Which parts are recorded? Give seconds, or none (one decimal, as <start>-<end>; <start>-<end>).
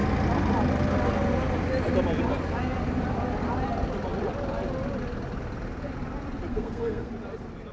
0.0-6.5; 7.1-7.7